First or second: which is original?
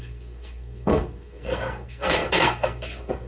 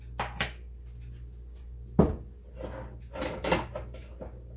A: second